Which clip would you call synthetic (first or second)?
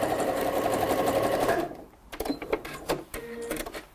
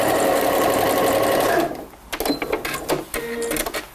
first